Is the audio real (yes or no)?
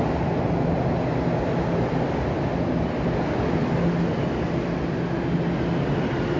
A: yes